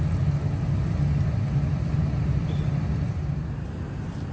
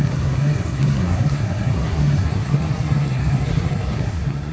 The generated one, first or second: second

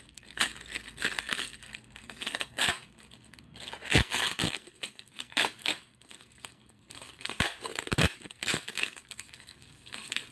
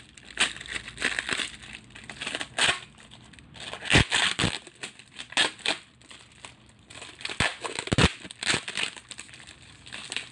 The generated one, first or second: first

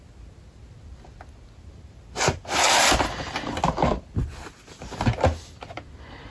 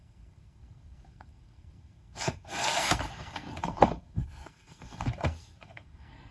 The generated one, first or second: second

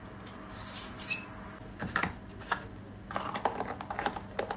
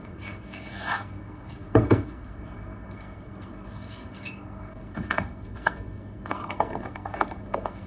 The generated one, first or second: second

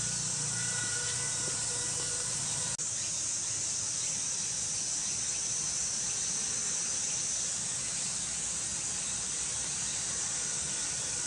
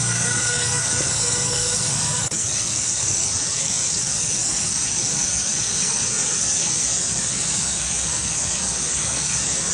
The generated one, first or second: second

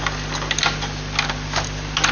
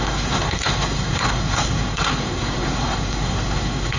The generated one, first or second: second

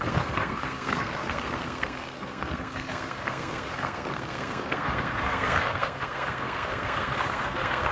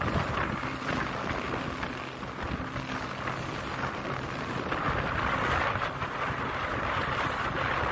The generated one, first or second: first